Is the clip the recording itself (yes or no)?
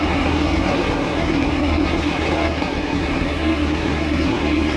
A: no